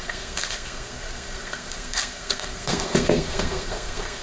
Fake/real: fake